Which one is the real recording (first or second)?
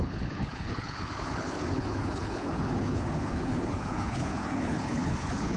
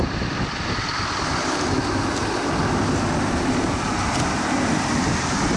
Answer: second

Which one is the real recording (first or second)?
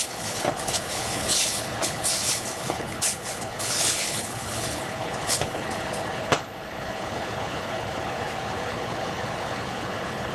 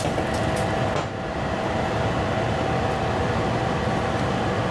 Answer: second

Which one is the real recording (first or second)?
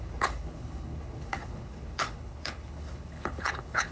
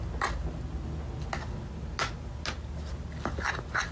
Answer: second